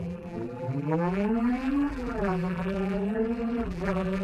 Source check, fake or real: fake